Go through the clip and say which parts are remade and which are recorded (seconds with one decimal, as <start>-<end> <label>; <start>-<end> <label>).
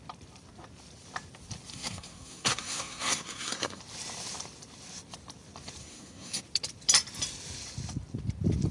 0.0-1.7 recorded; 1.7-3.8 remade; 3.8-5.8 recorded; 5.8-6.4 remade; 6.4-8.7 recorded